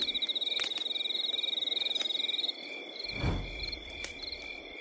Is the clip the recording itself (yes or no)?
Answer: yes